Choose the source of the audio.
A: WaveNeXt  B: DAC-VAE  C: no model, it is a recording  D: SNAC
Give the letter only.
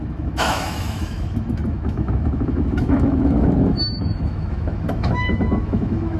B